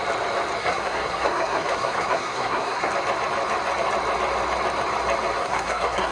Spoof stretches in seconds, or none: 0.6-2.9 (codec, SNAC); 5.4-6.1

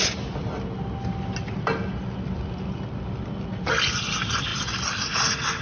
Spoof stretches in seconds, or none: none

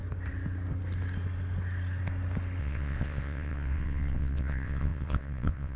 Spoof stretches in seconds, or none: 2.6-5.8 (vocoder, WaveNeXt)

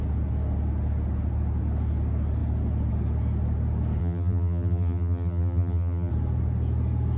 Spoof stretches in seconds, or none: 4.0-6.1 (vocoder, BigVGAN v2)

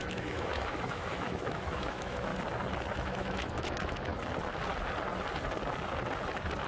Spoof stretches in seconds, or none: 0.0-2.3 (autoencoder, DAC-VAE); 2.9-4.1

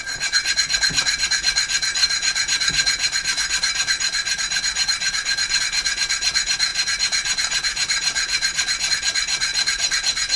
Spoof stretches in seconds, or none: 2.0-5.6 (vocoder, BigVGAN v2); 6.7-8.9; 9.5-10.4

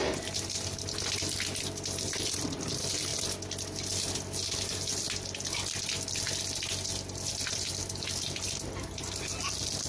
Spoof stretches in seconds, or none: none

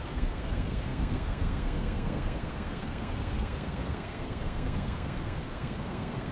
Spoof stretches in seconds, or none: 0.0-6.3 (codec, SNAC)